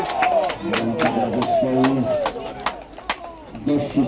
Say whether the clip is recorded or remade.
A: recorded